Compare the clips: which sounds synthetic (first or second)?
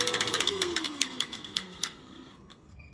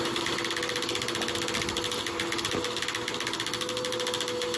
first